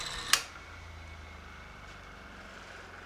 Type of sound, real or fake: real